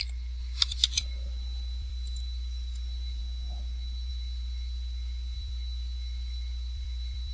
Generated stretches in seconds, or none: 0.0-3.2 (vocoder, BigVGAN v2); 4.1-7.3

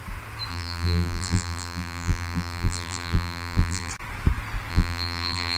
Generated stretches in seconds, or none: 0.5-3.9 (vocoder, BigVGAN v2); 4.7-5.6